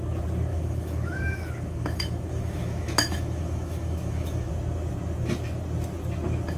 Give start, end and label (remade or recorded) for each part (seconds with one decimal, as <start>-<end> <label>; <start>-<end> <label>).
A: 0.0-0.5 recorded; 0.5-4.5 remade; 4.5-6.6 recorded